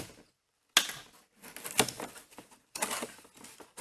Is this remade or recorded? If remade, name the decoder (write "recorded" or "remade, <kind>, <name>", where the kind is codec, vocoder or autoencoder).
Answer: recorded